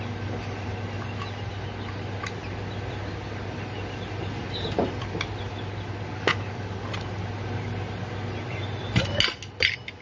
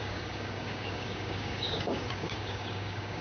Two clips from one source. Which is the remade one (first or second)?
second